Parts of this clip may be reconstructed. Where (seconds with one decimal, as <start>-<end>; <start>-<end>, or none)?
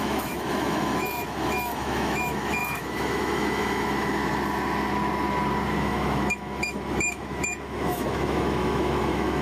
0.0-4.2; 5.8-9.4